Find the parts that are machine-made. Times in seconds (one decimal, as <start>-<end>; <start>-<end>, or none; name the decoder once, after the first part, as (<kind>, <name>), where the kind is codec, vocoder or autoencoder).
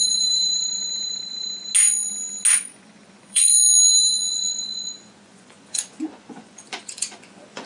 2.5-3.5 (vocoder, Vocos); 4.5-7.7